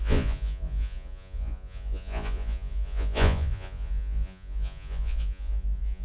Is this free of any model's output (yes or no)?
no